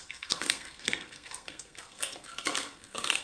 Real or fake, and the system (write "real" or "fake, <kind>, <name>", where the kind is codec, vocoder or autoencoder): fake, codec, SNAC